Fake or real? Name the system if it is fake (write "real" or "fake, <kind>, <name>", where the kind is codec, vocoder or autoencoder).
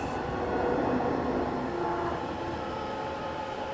real